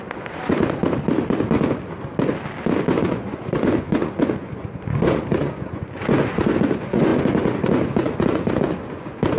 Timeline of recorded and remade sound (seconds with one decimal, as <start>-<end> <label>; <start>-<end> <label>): 0.0-0.8 remade; 0.8-2.9 recorded; 2.9-9.4 remade